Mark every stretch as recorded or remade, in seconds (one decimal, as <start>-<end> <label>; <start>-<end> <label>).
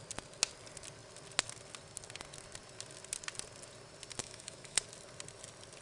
0.0-4.2 recorded; 4.2-4.8 remade; 4.8-5.8 recorded